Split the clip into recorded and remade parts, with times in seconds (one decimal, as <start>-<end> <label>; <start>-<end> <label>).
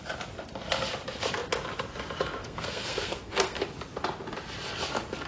0.0-2.4 recorded; 2.4-3.6 remade; 3.6-5.3 recorded